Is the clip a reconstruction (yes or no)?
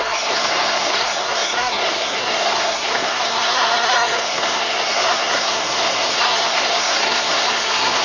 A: yes